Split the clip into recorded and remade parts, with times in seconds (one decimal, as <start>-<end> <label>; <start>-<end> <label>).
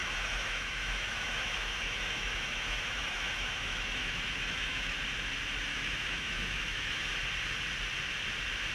0.0-5.0 remade; 5.0-5.7 recorded; 5.7-7.1 remade; 7.1-8.7 recorded